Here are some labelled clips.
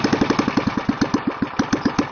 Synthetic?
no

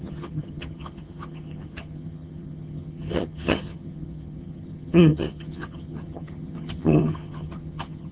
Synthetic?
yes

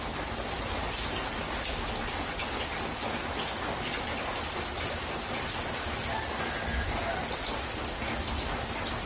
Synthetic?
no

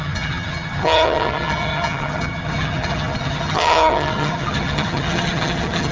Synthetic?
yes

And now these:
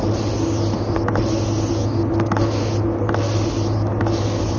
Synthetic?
no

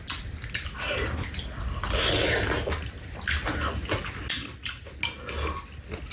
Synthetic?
no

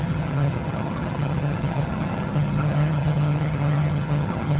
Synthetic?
yes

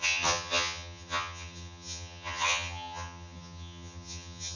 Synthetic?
yes